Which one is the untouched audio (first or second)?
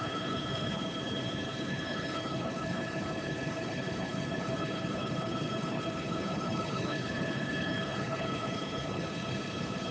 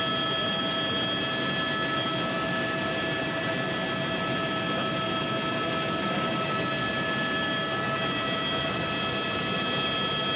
second